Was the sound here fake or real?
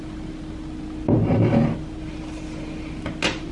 real